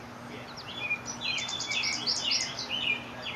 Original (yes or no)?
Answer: yes